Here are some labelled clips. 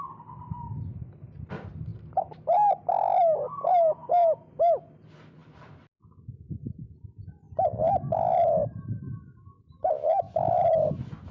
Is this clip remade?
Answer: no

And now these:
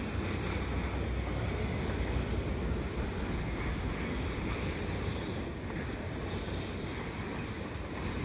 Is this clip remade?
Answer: no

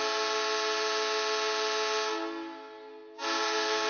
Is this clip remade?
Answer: no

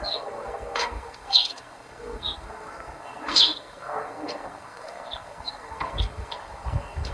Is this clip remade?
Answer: yes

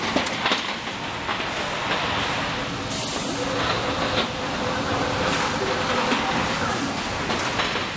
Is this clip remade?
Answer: no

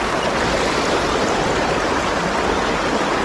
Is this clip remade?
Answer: no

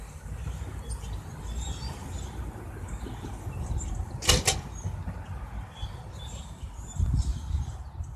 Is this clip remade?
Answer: no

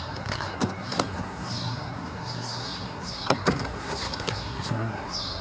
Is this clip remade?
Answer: yes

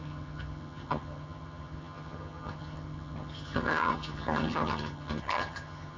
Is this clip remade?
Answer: yes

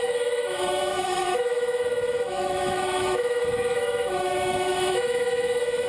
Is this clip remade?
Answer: yes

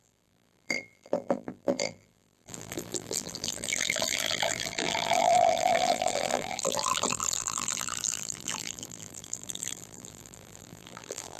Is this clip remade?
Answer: yes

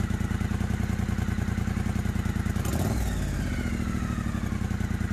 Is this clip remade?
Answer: no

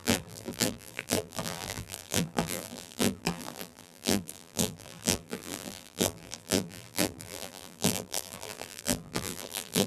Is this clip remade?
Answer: yes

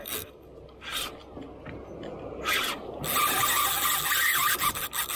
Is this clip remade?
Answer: no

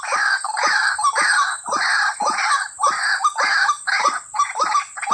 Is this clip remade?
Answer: no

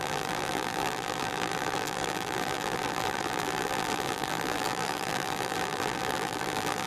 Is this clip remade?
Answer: yes